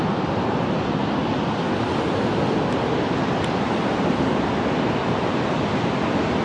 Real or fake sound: real